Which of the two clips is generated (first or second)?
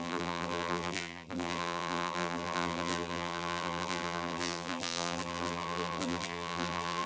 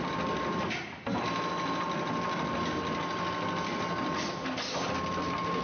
first